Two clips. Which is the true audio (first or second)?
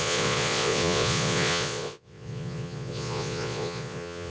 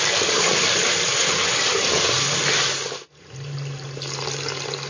second